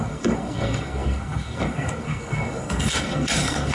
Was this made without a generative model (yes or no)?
no